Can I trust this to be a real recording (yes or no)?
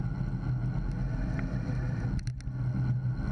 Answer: yes